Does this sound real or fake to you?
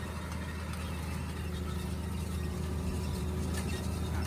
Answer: real